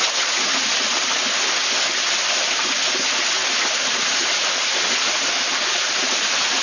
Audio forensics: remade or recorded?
recorded